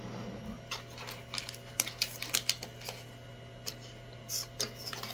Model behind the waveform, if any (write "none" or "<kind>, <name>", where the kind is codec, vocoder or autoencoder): none